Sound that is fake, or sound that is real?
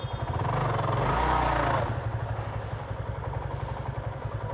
real